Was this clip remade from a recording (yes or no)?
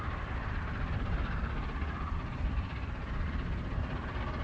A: yes